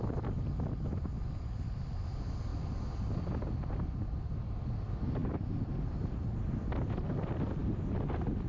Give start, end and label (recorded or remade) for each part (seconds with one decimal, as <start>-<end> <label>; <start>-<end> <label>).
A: 0.0-8.5 recorded